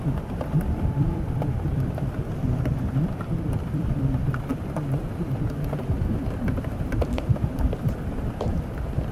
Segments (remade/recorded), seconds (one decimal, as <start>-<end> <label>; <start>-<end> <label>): 0.0-4.5 remade; 4.5-6.9 recorded; 6.9-9.1 remade

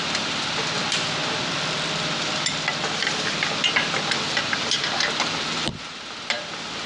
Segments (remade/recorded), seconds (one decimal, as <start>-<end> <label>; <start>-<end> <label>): 0.0-1.2 recorded; 1.2-5.3 remade; 5.3-6.9 recorded